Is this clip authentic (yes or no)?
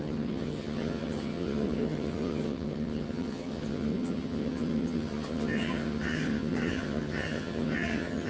no